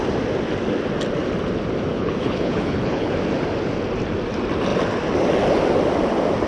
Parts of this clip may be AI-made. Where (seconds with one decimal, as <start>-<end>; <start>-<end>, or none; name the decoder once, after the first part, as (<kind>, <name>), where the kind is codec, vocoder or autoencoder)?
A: 1.9-3.1 (codec, HILCodec)